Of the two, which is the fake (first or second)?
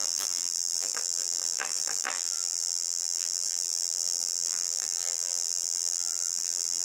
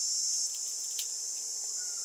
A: first